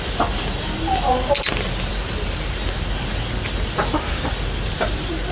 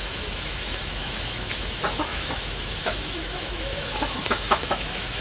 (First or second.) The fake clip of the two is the second